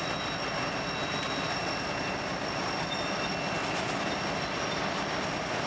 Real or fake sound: real